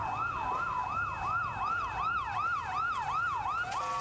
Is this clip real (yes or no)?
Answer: yes